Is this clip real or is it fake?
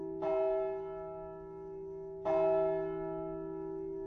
real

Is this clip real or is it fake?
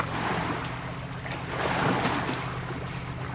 real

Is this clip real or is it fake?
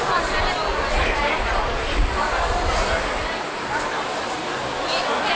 real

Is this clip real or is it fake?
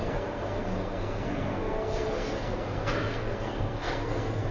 fake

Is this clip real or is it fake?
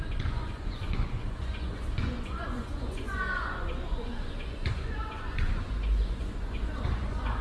fake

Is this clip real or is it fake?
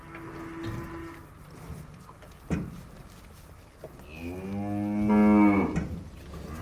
real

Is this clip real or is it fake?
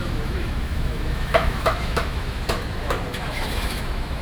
fake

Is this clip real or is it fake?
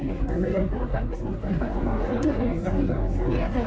fake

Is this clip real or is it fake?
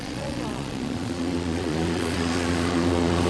fake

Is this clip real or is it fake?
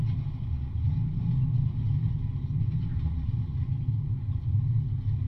real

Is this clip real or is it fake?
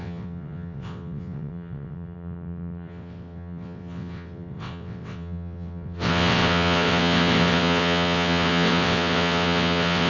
fake